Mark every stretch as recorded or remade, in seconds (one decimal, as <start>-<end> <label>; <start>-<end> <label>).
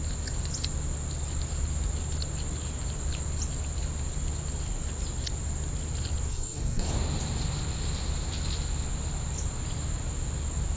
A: 0.0-6.3 recorded; 6.3-6.9 remade; 6.9-10.8 recorded